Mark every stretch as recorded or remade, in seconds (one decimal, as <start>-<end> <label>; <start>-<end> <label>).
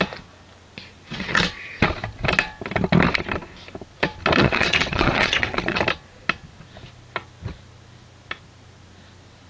0.0-1.1 recorded; 1.1-1.7 remade; 1.7-4.4 recorded; 4.4-5.8 remade; 5.8-9.5 recorded